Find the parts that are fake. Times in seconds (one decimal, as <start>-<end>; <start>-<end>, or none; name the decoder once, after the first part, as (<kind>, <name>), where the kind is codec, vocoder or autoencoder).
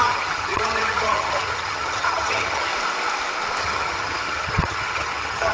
0.0-2.7 (vocoder, HiFi-GAN); 3.6-5.5